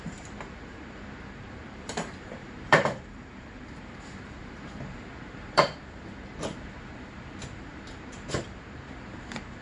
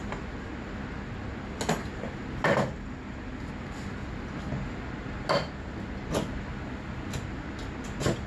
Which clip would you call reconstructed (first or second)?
first